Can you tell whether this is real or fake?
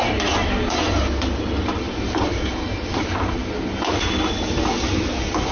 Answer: real